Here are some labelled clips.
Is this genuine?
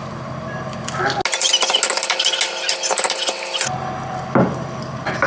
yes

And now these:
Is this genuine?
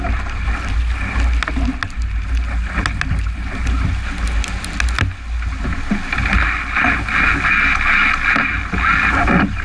yes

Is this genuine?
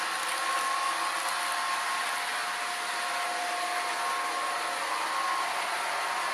yes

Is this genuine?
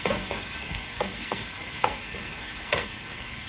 no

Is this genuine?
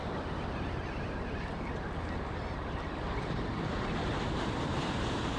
yes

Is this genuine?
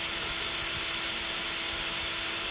yes